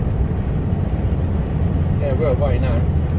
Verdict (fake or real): real